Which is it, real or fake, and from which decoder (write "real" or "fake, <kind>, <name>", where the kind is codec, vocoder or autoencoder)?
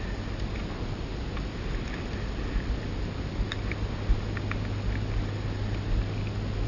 real